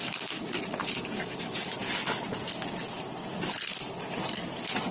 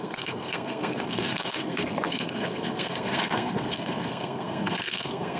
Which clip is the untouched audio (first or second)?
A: first